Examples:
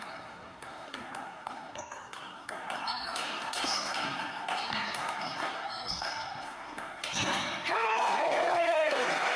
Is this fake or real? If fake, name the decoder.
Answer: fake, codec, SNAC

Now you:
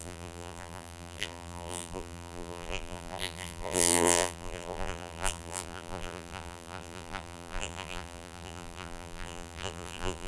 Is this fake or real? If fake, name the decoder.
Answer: fake, vocoder, BigVGAN v2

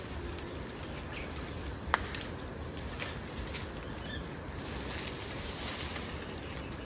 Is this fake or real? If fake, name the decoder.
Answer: real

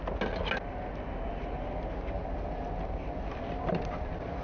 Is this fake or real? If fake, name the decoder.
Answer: real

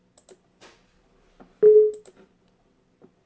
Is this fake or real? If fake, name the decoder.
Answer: real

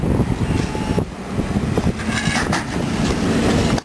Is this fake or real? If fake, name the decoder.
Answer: real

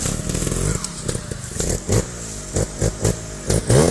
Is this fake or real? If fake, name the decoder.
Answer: real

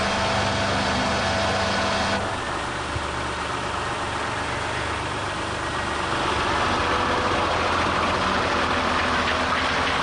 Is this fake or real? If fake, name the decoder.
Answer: real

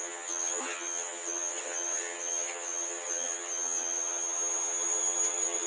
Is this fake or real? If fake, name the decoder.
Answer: fake, vocoder, HiFi-GAN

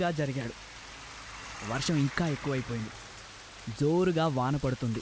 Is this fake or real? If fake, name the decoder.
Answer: real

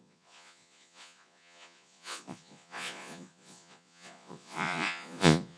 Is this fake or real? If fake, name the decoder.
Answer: fake, vocoder, Vocos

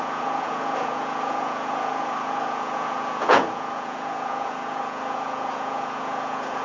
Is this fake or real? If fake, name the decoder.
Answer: fake, vocoder, Vocos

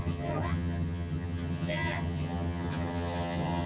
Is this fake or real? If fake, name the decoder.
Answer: fake, vocoder, HiFi-GAN